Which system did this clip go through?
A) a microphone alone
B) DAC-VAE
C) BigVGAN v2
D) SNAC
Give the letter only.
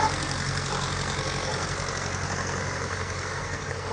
D